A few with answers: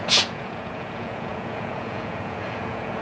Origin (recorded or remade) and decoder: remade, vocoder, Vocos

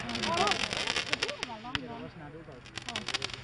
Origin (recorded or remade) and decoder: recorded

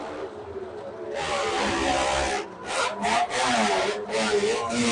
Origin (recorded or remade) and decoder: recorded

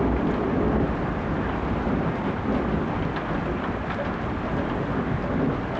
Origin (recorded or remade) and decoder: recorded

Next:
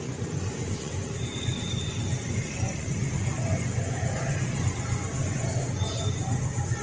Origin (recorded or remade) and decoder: remade, vocoder, Vocos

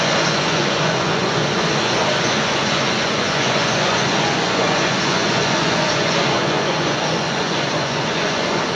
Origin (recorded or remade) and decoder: remade, vocoder, Vocos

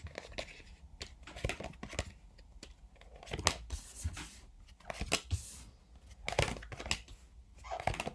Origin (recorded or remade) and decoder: recorded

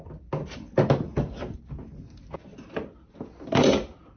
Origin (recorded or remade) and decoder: recorded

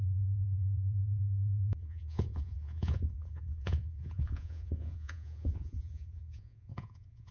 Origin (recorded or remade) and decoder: remade, vocoder, Vocos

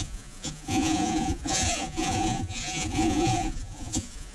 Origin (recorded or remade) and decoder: remade, vocoder, Vocos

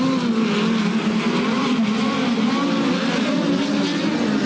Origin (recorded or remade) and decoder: recorded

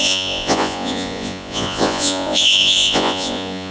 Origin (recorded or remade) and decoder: remade, vocoder, Vocos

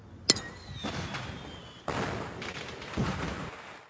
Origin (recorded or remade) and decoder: recorded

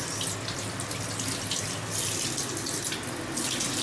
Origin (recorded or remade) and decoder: recorded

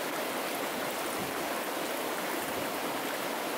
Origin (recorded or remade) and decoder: recorded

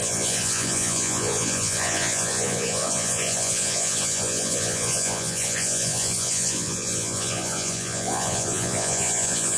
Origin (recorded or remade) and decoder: remade, vocoder, Vocos